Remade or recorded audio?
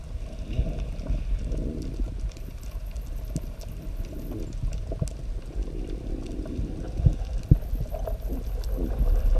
recorded